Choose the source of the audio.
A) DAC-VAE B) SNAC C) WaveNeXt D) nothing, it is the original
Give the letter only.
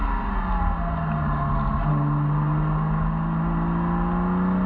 D